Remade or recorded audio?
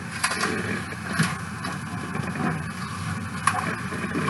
recorded